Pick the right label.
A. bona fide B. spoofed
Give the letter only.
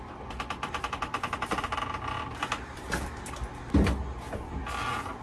A